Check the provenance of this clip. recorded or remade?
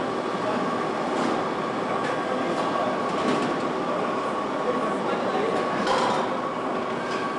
recorded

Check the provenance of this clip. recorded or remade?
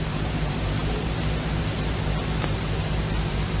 remade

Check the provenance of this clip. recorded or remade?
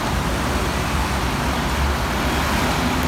recorded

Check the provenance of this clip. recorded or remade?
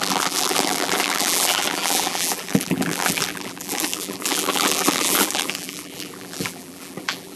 remade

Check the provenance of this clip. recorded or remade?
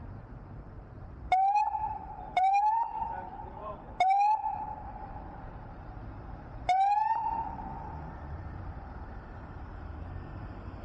remade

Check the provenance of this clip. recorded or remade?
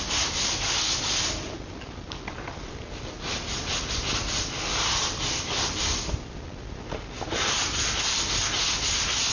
recorded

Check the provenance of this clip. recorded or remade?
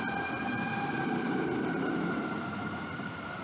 remade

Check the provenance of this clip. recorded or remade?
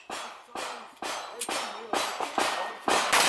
recorded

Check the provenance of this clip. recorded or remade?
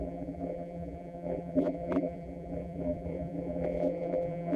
remade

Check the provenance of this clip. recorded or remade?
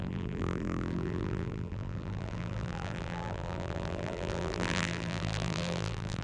remade